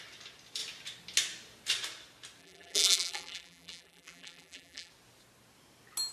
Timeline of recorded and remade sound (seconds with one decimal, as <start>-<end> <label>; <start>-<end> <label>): 0.0-2.4 recorded; 2.4-4.9 remade; 4.9-6.1 recorded